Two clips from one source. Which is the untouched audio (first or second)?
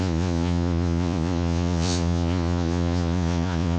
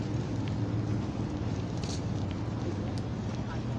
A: second